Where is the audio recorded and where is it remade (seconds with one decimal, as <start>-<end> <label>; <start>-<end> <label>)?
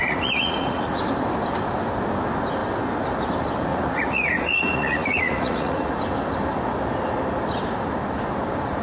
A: 0.0-1.0 remade; 1.0-3.7 recorded; 3.7-5.9 remade; 5.9-8.8 recorded